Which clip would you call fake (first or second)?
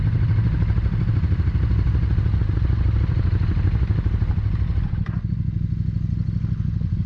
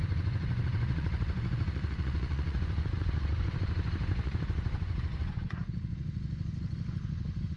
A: second